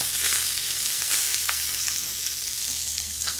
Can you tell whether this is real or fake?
fake